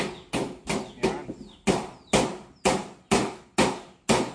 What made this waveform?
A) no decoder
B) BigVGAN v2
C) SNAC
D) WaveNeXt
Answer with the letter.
A